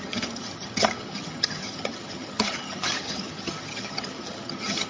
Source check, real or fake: fake